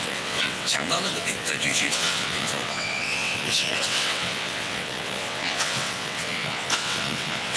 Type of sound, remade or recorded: remade